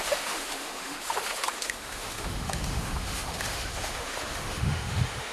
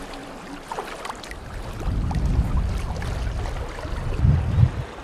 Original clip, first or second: second